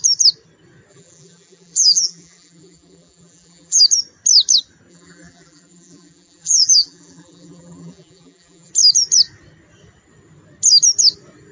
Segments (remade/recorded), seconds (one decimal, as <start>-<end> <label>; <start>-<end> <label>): 0.0-0.9 recorded; 0.9-3.8 remade; 3.8-4.9 recorded; 4.9-8.7 remade; 8.7-11.5 recorded